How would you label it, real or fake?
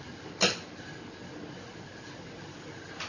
real